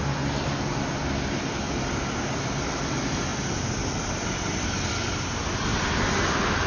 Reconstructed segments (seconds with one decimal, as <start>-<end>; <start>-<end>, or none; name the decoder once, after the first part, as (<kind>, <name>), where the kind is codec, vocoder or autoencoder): 3.3-5.3 (vocoder, BigVGAN v2)